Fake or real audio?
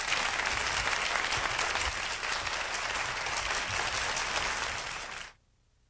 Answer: real